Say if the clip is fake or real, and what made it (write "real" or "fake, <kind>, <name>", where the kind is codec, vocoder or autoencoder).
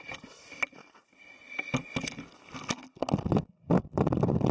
real